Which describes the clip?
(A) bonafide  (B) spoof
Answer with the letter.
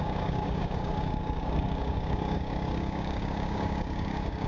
B